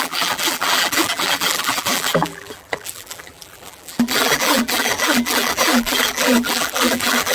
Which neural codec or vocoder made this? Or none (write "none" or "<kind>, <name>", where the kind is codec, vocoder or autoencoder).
vocoder, BigVGAN v2